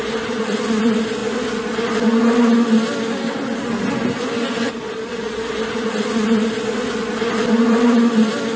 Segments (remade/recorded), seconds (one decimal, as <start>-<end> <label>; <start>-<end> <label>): 0.0-1.2 remade; 1.2-5.6 recorded; 5.6-7.0 remade; 7.0-7.6 recorded; 7.6-8.6 remade